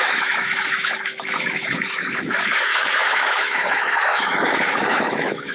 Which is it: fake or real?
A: fake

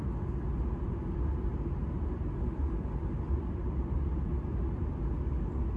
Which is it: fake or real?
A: real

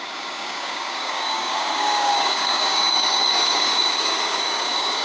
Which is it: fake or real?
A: fake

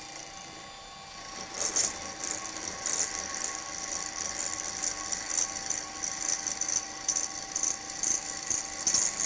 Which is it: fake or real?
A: real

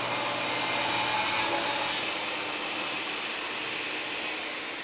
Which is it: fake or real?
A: real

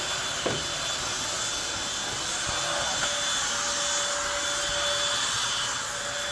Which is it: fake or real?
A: real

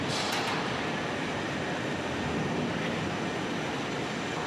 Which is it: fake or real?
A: real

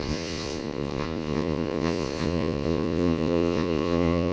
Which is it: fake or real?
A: fake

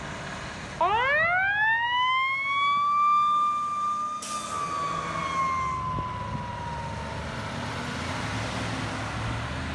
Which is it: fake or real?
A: real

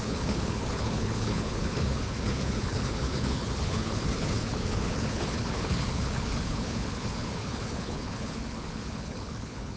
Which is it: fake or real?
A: fake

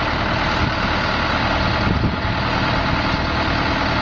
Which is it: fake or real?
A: real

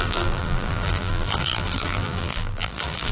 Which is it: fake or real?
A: fake